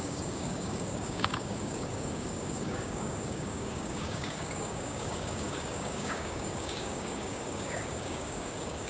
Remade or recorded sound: remade